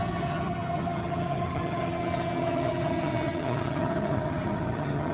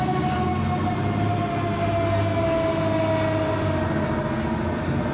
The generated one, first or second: first